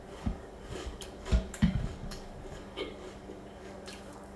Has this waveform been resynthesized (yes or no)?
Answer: yes